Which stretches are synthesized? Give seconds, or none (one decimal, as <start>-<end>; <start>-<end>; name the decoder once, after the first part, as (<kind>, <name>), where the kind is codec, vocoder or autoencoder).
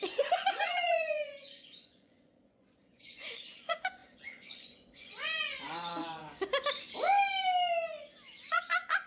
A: 0.0-6.2 (vocoder, Vocos); 8.5-9.1